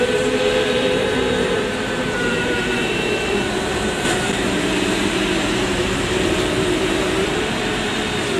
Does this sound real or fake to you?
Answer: fake